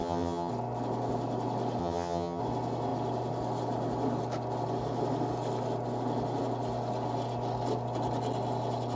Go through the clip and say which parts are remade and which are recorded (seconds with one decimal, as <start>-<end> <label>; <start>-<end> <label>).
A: 0.0-0.5 remade; 0.5-1.8 recorded; 1.8-2.4 remade; 2.4-9.0 recorded